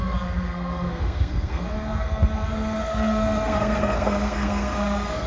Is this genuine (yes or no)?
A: no